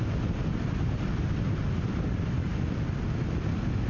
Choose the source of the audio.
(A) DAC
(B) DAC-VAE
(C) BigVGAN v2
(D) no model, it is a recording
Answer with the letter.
D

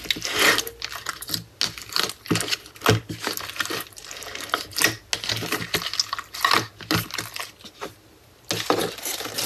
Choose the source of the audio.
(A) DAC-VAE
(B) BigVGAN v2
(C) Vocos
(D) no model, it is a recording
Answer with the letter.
D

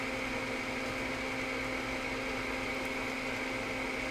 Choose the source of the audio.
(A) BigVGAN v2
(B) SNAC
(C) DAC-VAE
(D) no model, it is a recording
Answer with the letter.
D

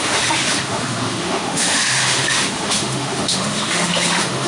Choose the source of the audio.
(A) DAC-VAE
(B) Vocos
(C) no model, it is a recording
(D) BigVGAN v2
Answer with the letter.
A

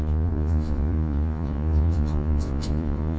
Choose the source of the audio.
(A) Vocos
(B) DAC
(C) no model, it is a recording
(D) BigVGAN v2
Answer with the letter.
A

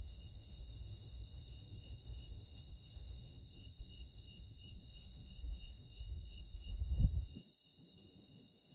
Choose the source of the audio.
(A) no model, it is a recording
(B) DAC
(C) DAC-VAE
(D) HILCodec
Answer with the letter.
C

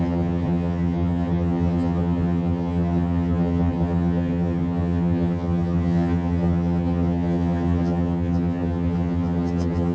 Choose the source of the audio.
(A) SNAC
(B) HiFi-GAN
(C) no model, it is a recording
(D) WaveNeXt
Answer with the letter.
B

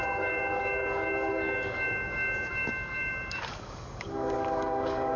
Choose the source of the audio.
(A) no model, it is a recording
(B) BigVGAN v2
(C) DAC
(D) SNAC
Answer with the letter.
C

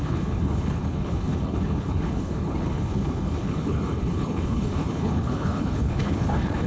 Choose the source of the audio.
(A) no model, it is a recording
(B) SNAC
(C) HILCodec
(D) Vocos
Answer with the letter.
C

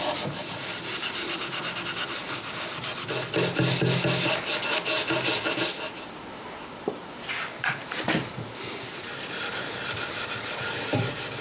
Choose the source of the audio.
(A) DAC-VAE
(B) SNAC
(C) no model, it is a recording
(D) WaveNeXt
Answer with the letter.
C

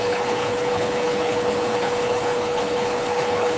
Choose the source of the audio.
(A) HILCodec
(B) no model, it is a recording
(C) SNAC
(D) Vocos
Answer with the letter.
A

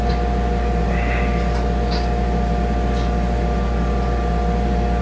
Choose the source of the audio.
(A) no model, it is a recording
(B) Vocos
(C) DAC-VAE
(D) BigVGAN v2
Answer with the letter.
A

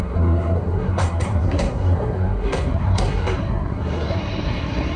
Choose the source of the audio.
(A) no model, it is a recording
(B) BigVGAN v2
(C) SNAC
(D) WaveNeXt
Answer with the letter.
C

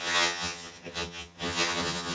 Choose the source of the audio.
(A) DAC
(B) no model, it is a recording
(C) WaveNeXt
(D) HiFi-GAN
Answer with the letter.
D